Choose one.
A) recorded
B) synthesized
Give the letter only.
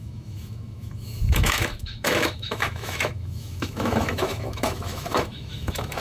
B